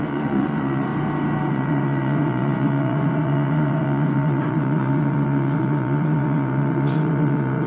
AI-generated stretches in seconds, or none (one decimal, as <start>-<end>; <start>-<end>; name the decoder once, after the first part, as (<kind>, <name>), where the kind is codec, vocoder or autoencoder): 0.0-0.9 (vocoder, Vocos); 1.5-7.7